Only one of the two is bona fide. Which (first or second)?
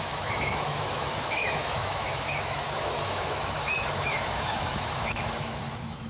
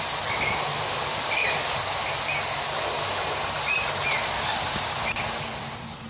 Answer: second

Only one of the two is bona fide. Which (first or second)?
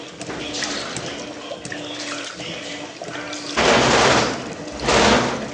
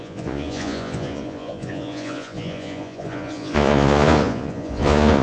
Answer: first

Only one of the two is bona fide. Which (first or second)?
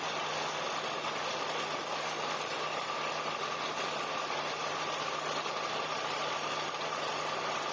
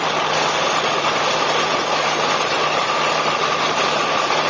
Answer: first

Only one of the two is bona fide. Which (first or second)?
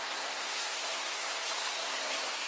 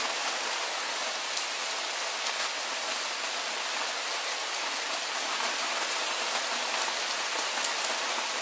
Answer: second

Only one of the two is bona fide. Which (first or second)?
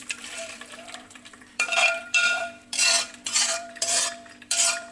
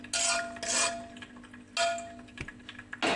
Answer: second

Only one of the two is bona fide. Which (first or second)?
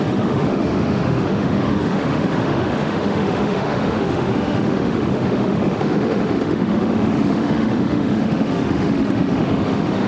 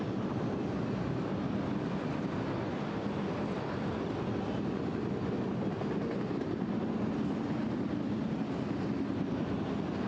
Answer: second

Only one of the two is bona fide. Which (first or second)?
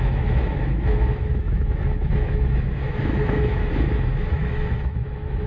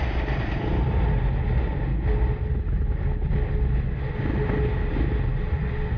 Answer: second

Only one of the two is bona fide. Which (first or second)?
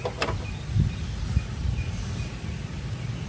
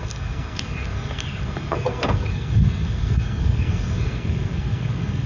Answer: first